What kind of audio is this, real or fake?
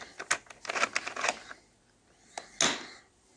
real